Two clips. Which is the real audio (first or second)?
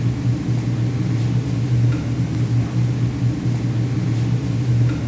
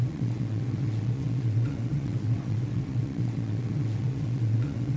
first